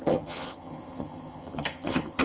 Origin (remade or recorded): remade